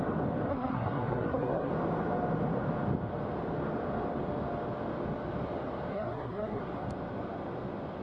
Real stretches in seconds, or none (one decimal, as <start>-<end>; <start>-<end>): 0.0-0.5; 1.7-5.9; 6.6-8.0